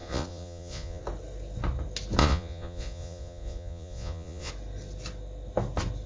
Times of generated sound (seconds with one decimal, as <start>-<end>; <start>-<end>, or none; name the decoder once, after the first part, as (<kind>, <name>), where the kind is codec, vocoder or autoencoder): 0.0-1.0 (vocoder, Vocos); 2.2-4.5